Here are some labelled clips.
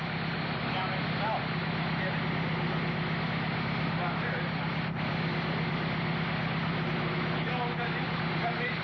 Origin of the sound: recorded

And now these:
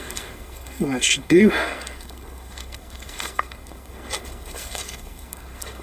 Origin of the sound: remade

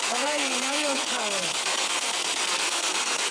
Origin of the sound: remade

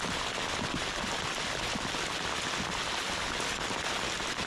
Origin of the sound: recorded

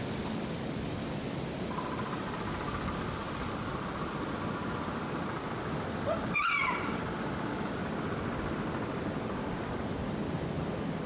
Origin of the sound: recorded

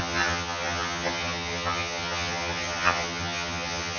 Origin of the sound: remade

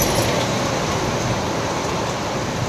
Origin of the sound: recorded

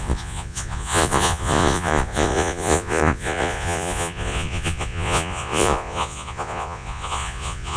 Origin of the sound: remade